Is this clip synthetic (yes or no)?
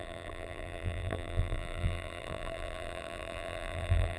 yes